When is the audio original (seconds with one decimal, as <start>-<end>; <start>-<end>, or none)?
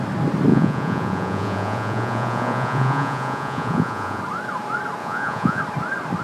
0.0-0.5; 4.2-5.0; 5.6-6.2